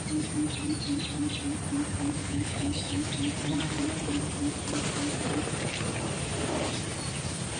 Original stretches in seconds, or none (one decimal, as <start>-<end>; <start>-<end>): 0.0-2.2; 3.1-7.6